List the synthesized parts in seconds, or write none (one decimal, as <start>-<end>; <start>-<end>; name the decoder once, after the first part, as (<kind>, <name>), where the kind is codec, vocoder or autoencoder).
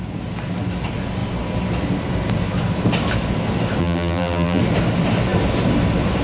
3.8-4.6 (vocoder, BigVGAN v2)